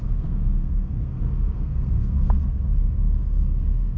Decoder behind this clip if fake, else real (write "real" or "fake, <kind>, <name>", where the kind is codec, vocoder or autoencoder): fake, codec, SNAC